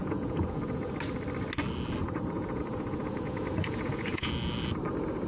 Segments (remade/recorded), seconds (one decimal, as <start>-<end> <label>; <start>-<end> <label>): 0.0-0.9 remade; 0.9-2.0 recorded; 2.0-4.3 remade; 4.3-5.3 recorded